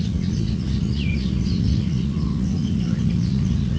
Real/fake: fake